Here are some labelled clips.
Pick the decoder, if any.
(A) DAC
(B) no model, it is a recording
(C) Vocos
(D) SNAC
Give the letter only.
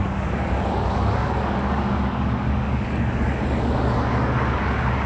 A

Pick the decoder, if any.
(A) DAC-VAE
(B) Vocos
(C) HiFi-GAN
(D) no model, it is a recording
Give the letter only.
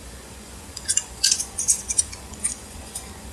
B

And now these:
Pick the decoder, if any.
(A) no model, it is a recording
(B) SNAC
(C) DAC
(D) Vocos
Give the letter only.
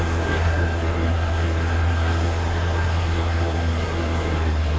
B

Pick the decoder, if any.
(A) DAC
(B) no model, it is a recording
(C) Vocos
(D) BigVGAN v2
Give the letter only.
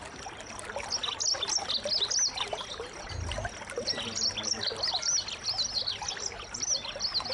B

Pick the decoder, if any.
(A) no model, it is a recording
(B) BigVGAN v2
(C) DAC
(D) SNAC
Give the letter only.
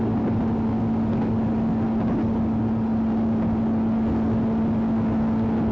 A